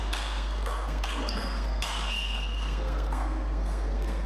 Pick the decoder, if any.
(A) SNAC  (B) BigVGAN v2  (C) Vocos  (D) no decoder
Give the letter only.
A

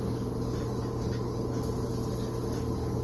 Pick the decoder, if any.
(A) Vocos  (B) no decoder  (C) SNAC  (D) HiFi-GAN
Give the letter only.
B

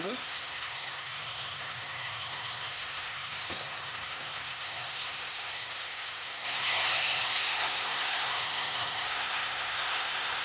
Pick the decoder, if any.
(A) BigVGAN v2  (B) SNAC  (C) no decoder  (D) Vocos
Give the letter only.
B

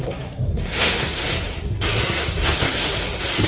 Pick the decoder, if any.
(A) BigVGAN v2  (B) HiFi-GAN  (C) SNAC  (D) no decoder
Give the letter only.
C